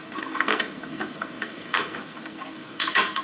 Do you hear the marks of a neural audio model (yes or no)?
yes